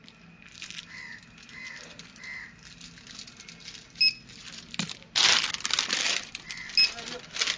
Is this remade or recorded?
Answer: recorded